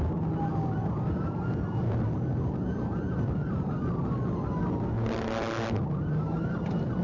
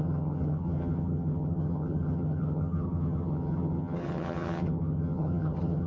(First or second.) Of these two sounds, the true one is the first